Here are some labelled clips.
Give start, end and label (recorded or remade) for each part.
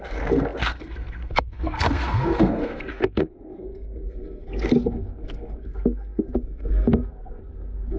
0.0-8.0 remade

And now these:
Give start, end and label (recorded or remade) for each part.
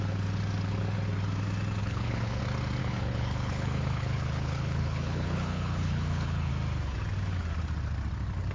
0.0-1.8 recorded; 1.8-2.4 remade; 2.4-2.8 recorded; 2.8-6.5 remade; 6.5-8.5 recorded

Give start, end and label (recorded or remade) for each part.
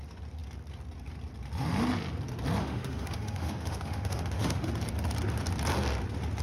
0.0-2.6 recorded; 2.6-4.7 remade; 4.7-6.4 recorded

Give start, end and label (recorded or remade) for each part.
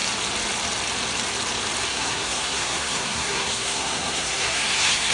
0.0-1.9 recorded; 1.9-5.1 remade